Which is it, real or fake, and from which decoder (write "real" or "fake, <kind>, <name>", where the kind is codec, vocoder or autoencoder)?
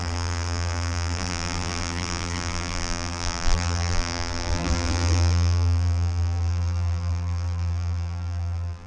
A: fake, vocoder, BigVGAN v2